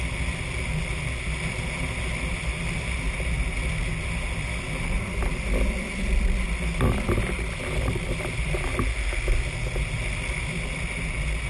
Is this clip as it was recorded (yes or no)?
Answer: yes